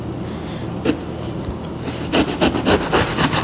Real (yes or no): yes